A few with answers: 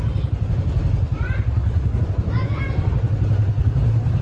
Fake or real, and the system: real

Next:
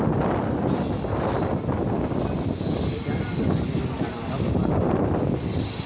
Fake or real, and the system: real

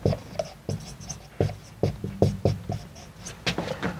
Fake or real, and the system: real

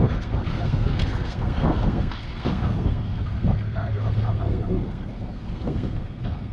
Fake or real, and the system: fake, codec, SNAC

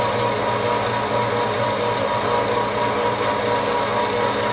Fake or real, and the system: real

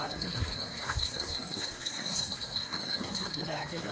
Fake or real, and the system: fake, codec, SNAC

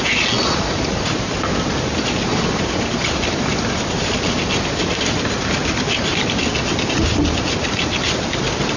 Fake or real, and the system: real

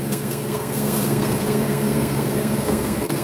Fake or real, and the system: fake, codec, SNAC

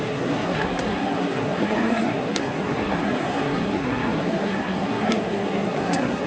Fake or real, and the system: fake, codec, SNAC